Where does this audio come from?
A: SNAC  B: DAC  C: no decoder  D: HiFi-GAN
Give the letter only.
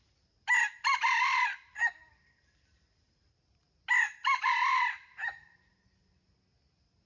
C